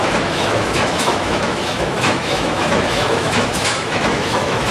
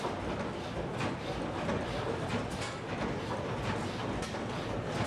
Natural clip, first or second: second